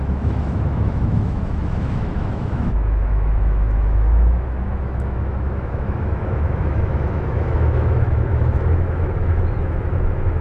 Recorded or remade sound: remade